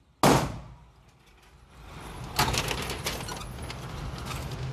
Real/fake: real